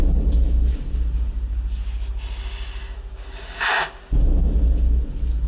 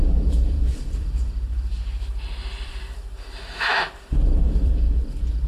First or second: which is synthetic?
second